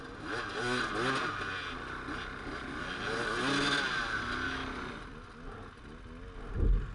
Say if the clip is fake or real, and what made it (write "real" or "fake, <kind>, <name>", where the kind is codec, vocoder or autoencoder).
real